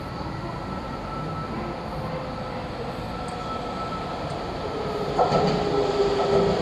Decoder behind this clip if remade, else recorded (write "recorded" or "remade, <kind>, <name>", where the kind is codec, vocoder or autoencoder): recorded